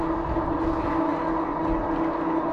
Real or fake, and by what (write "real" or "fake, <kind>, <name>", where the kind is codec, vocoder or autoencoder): real